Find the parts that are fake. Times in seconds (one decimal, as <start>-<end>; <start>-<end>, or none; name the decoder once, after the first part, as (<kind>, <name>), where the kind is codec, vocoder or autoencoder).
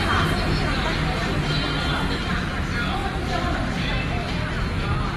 3.0-4.3 (vocoder, BigVGAN v2)